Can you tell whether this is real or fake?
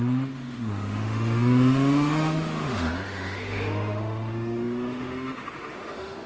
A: fake